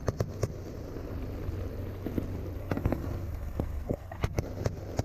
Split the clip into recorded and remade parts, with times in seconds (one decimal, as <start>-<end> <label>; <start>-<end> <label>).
0.0-2.6 recorded; 2.6-4.4 remade; 4.4-5.0 recorded